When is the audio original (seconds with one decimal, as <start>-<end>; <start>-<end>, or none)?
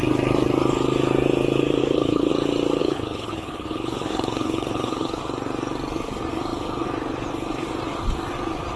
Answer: 0.0-1.8; 2.3-2.8; 5.2-8.8